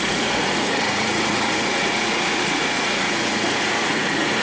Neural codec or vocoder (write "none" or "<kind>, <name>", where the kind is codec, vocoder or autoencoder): vocoder, Vocos